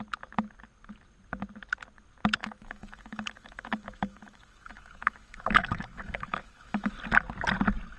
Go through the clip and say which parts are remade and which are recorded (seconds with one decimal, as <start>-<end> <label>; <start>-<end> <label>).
0.0-2.4 recorded; 2.4-6.9 remade; 6.9-8.0 recorded